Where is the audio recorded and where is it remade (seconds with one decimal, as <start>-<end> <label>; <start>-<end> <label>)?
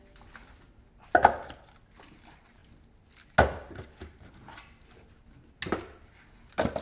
0.0-6.8 recorded